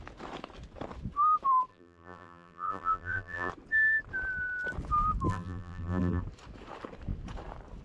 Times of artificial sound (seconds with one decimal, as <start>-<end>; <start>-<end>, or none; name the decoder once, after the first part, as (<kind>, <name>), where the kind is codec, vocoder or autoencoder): 1.7-3.5 (vocoder, BigVGAN v2); 5.3-6.2